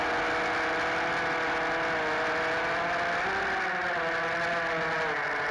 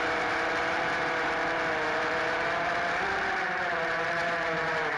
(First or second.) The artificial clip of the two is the second